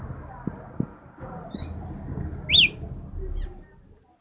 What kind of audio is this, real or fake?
real